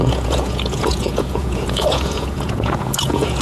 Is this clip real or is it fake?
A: fake